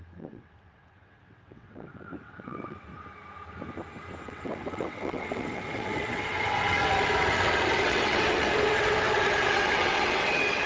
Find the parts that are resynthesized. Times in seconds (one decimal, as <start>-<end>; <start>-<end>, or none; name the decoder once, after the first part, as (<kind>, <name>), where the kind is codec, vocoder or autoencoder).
0.0-2.9 (vocoder, WaveNeXt); 4.2-10.7